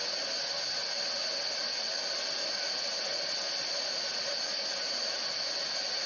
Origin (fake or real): real